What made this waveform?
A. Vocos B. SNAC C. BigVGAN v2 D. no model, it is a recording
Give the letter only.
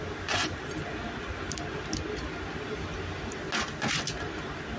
D